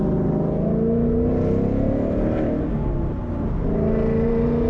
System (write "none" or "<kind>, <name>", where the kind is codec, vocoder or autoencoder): none